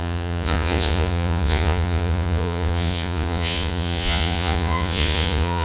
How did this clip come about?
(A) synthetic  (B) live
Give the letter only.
A